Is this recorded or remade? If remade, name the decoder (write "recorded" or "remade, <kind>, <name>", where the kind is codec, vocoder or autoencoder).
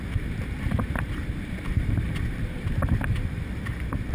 remade, vocoder, BigVGAN v2